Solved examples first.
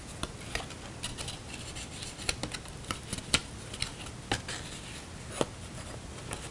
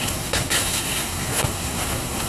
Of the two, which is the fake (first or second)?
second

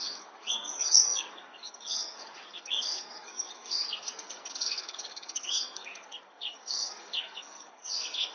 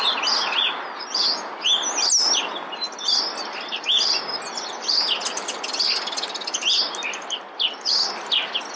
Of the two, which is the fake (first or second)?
first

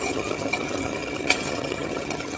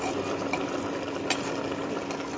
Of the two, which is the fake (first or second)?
first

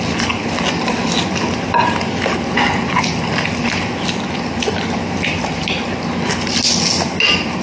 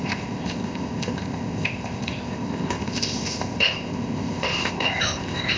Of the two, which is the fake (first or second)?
second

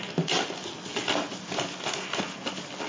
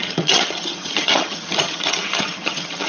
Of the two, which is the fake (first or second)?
second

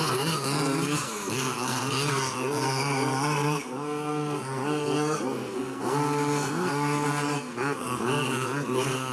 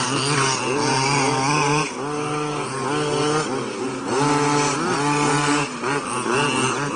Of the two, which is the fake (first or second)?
first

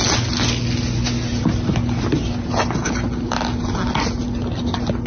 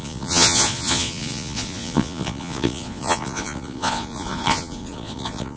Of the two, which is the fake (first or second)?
second